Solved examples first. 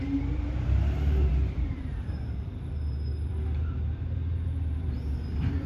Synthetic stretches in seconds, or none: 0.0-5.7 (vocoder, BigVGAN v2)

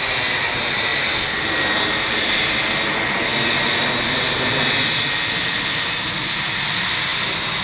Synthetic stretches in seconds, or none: none